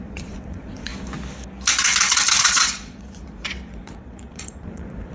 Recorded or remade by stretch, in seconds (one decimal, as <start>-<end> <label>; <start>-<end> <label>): 0.0-0.9 remade; 0.9-2.4 recorded; 2.4-5.1 remade